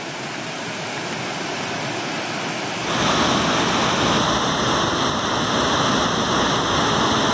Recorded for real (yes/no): yes